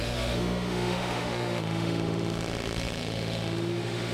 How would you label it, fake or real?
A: fake